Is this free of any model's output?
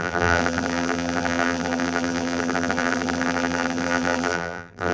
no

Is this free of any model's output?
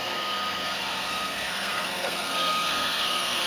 no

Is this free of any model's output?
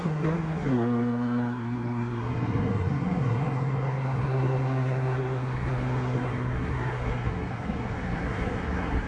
no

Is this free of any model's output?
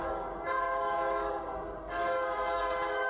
no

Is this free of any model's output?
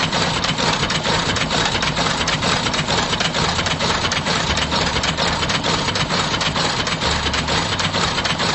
no